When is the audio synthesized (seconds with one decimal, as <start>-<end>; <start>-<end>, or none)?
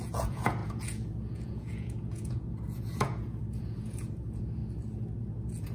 0.0-4.6; 5.2-5.7